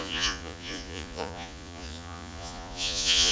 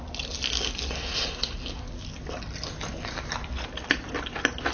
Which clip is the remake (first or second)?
first